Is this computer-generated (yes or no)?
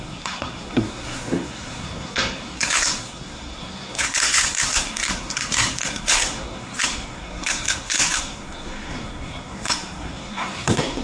yes